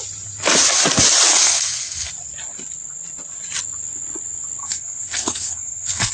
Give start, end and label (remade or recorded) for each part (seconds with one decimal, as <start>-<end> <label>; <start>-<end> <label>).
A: 0.0-1.3 recorded; 1.3-2.1 remade; 2.1-4.6 recorded; 4.6-6.1 remade